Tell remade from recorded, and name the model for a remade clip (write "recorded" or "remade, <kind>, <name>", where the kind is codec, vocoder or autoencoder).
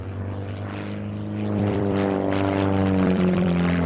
remade, vocoder, BigVGAN v2